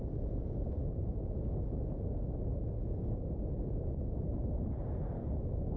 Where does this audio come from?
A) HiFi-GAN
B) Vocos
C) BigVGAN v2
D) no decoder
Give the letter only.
D